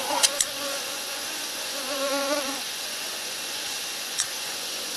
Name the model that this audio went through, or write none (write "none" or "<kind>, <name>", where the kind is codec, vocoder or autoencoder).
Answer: vocoder, Vocos